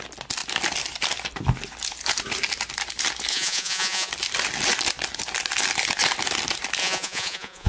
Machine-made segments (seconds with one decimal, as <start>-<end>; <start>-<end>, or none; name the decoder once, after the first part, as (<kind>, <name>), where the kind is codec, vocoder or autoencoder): 3.3-4.1 (vocoder, Vocos); 6.8-7.7